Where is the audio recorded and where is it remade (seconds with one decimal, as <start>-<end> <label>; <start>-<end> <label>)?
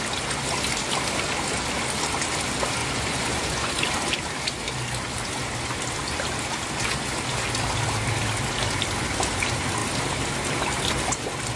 0.0-2.8 recorded; 2.8-3.7 remade; 3.7-11.6 recorded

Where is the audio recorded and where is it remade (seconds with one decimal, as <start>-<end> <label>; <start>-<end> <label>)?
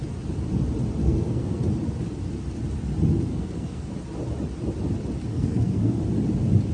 0.0-1.0 recorded; 1.0-1.6 remade; 1.6-3.3 recorded; 3.3-3.9 remade; 3.9-5.3 recorded; 5.3-6.0 remade; 6.0-6.7 recorded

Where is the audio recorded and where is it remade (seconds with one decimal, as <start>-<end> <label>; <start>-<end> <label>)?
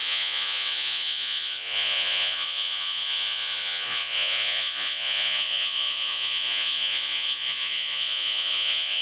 0.0-9.0 remade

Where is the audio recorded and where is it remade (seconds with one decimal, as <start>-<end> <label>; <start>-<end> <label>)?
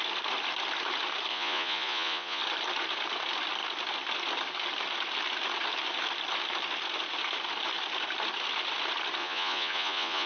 0.0-1.3 recorded; 1.3-2.4 remade; 2.4-9.2 recorded; 9.2-10.3 remade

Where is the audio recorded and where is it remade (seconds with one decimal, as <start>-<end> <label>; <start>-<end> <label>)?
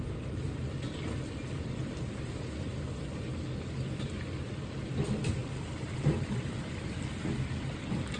0.0-5.4 recorded; 5.4-6.8 remade; 6.8-8.2 recorded